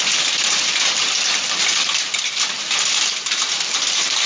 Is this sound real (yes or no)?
yes